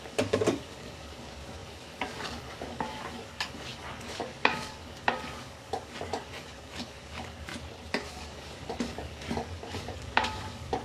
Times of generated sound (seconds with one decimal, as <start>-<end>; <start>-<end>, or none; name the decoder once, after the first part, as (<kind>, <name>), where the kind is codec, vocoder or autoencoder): 0.0-7.5 (codec, DAC); 8.1-10.8